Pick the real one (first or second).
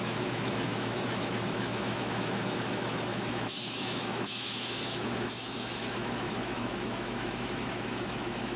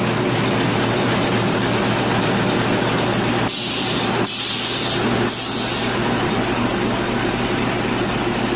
second